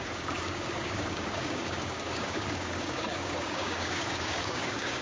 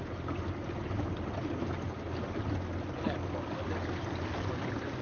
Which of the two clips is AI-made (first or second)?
first